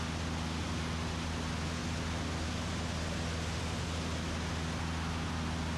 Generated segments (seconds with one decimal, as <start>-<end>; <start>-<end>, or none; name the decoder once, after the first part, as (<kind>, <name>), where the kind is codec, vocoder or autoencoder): none